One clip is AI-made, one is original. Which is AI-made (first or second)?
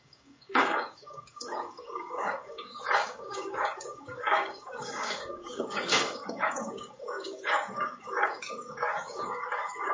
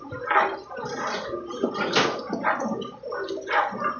first